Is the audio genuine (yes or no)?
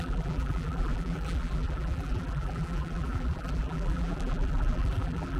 no